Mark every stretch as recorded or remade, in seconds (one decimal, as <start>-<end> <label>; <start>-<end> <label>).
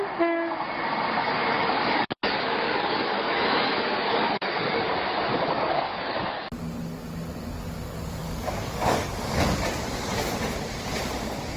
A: 0.0-1.2 recorded; 1.2-4.8 remade; 4.8-5.3 recorded; 5.3-6.2 remade; 6.2-8.2 recorded; 8.2-9.1 remade; 9.1-11.6 recorded